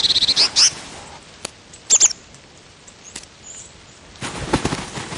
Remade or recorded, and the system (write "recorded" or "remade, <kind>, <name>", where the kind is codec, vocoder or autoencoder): recorded